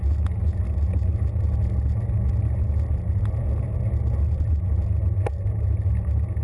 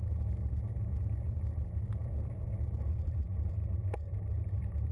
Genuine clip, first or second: first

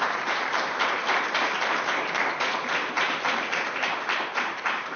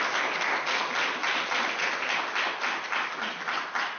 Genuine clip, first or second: second